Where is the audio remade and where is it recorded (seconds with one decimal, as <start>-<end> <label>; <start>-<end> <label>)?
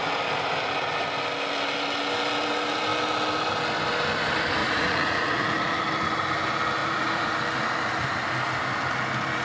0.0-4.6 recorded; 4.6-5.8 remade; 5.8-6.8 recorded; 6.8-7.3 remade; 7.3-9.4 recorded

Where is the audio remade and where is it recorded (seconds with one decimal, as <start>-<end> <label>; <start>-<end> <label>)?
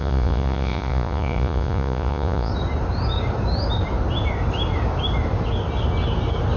0.0-2.5 remade; 2.5-6.6 recorded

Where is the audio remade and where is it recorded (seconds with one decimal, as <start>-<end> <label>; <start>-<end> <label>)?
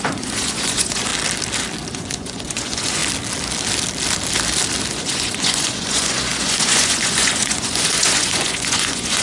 0.0-1.1 remade; 1.1-1.9 recorded; 1.9-3.0 remade; 3.0-4.9 recorded; 4.9-9.2 remade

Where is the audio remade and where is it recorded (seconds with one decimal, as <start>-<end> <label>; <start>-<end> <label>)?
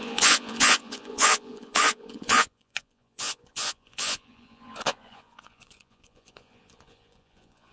0.0-7.7 remade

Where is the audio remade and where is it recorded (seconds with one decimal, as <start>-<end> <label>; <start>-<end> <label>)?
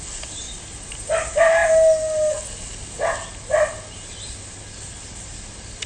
0.0-5.9 recorded